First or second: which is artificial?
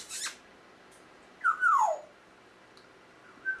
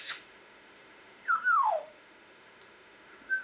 second